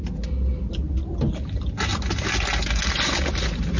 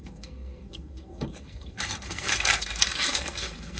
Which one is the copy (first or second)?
second